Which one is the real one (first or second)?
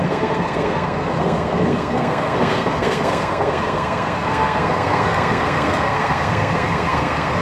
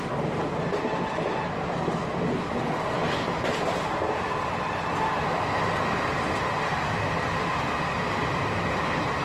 second